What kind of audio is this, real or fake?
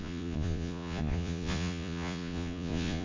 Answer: fake